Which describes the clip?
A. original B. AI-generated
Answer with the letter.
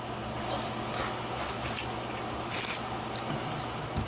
A